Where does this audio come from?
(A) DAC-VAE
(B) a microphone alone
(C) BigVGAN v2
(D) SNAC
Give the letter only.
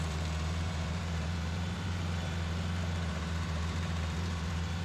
C